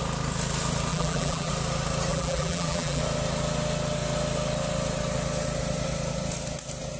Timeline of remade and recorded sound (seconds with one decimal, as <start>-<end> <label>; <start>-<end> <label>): 0.0-0.9 recorded; 0.9-1.5 remade; 1.5-2.1 recorded; 2.1-3.0 remade; 3.0-7.0 recorded

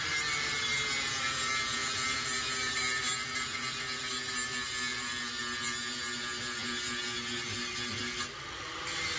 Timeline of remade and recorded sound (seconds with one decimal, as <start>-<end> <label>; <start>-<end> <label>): 0.0-4.9 recorded; 4.9-5.4 remade; 5.4-9.2 recorded

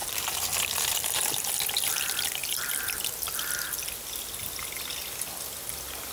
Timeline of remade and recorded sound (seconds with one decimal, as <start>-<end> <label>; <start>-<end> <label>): 0.0-1.3 remade; 1.3-6.1 recorded

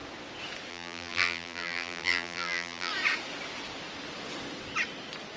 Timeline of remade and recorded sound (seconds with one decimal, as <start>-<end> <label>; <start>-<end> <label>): 0.0-0.7 recorded; 0.7-2.9 remade; 2.9-5.4 recorded

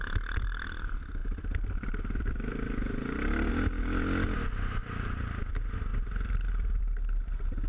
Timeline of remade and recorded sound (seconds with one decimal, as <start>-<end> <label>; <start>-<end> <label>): 0.0-1.2 recorded; 1.2-3.5 remade; 3.5-4.8 recorded; 4.8-5.5 remade; 5.5-5.9 recorded; 5.9-6.8 remade; 6.8-7.7 recorded

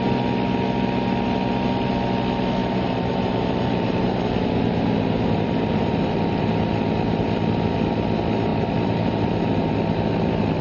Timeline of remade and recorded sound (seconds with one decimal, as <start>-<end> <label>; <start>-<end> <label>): 0.0-2.6 recorded; 2.6-6.6 remade; 6.6-8.5 recorded; 8.5-9.7 remade; 9.7-10.6 recorded

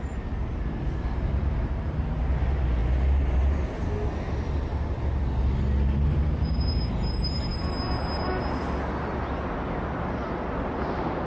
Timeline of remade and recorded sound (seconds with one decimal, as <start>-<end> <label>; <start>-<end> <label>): 0.0-11.3 recorded

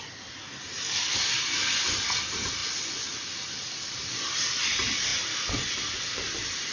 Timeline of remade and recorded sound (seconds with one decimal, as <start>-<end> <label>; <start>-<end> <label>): 0.0-6.7 remade